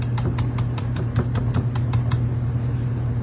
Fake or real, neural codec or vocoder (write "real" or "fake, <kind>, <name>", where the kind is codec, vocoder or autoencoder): real